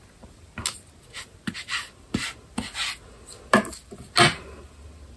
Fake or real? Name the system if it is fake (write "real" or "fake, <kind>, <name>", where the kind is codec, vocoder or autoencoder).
real